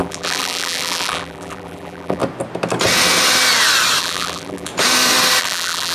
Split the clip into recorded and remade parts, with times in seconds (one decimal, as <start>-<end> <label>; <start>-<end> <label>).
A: 0.0-2.2 remade; 2.2-4.0 recorded; 4.0-4.7 remade; 4.7-5.4 recorded; 5.4-5.9 remade